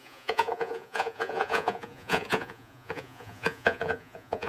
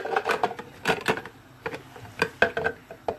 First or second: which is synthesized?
first